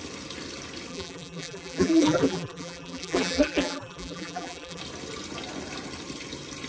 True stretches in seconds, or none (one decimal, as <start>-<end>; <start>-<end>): 0.0-0.9; 4.8-6.7